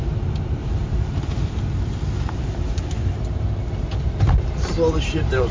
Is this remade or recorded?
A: remade